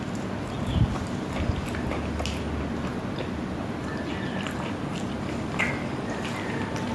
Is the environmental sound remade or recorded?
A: recorded